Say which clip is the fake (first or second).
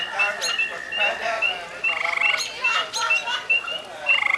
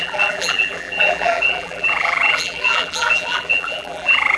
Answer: second